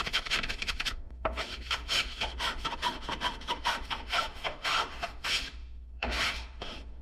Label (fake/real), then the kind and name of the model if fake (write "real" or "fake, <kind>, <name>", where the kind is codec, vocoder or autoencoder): fake, autoencoder, DAC-VAE